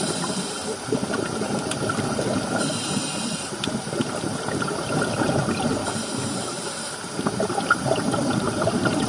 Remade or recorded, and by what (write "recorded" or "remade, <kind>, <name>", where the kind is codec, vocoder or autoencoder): remade, vocoder, BigVGAN v2